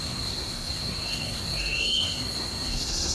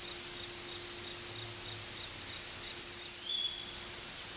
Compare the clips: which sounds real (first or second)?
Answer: second